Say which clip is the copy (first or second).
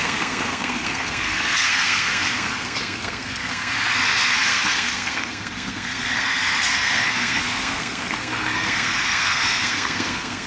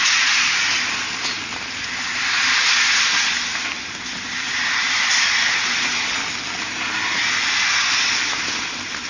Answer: first